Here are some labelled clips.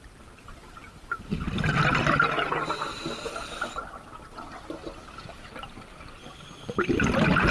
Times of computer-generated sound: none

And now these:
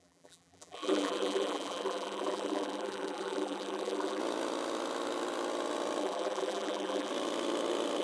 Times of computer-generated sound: 0.0-4.2 (vocoder, BigVGAN v2); 6.0-7.1

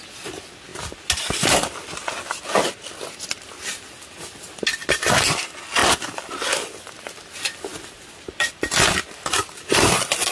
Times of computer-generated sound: 5.8-6.5 (vocoder, BigVGAN v2); 7.7-8.5

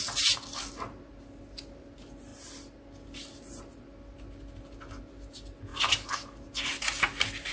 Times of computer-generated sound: 5.7-6.4 (vocoder, BigVGAN v2)